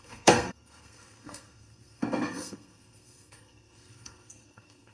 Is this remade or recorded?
remade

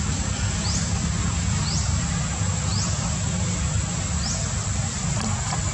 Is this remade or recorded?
recorded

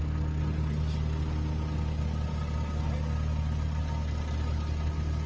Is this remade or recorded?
recorded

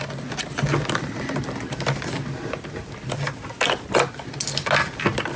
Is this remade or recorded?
recorded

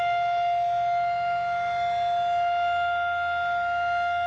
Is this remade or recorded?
recorded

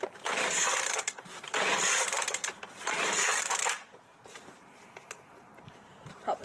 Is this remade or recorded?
remade